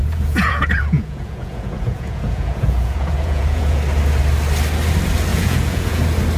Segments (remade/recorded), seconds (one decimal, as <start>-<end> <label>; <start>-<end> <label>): 0.0-3.8 remade; 3.8-5.3 recorded; 5.3-6.0 remade; 6.0-6.4 recorded